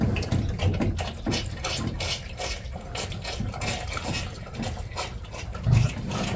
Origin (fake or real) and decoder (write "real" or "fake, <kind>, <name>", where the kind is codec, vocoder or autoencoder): real